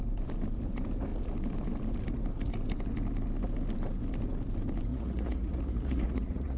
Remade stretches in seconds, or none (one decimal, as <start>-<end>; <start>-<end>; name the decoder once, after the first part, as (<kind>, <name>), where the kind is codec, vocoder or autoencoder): 4.9-6.6 (vocoder, Vocos)